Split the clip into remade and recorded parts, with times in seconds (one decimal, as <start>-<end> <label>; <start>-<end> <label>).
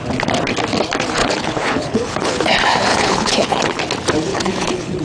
0.0-1.2 recorded; 1.2-2.4 remade; 2.4-2.9 recorded; 2.9-3.8 remade; 3.8-4.3 recorded; 4.3-5.0 remade